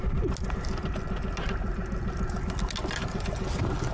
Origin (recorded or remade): recorded